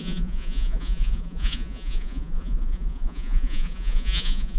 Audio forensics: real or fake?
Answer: fake